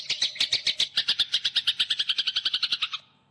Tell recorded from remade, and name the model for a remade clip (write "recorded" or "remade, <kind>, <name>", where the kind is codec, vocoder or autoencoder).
recorded